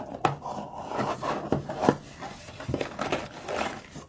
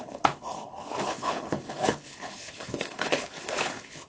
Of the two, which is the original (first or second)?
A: first